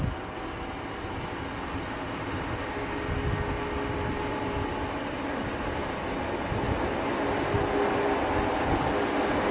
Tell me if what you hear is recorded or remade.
recorded